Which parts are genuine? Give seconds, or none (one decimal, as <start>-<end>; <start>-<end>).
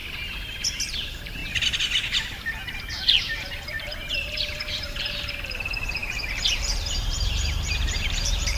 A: 0.0-0.7; 1.4-2.9